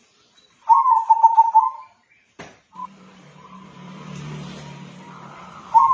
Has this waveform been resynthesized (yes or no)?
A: yes